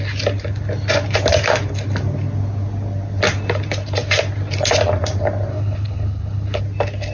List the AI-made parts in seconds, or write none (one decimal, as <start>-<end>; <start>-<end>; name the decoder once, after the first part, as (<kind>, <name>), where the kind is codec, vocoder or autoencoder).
5.5-6.6 (codec, HILCodec)